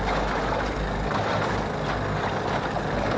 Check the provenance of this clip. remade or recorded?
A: recorded